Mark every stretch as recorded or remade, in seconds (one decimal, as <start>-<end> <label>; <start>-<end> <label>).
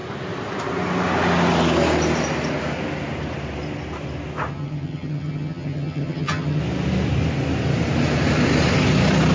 0.0-4.5 recorded; 4.5-6.6 remade; 6.6-9.3 recorded